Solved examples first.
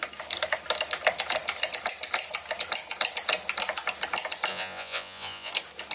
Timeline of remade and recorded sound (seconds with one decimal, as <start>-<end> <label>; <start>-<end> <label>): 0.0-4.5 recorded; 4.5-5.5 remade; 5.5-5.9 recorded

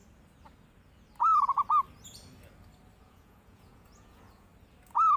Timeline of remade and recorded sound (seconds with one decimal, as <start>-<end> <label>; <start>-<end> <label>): 0.0-3.0 recorded; 3.0-4.5 remade; 4.5-5.2 recorded

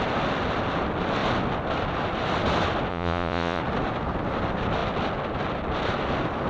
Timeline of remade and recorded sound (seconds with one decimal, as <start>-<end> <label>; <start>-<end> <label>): 0.0-2.9 recorded; 2.9-3.6 remade; 3.6-6.5 recorded